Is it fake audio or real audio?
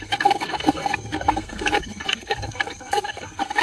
fake